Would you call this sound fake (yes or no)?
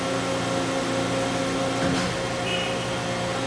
no